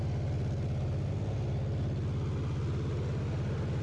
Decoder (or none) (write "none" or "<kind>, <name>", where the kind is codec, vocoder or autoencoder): none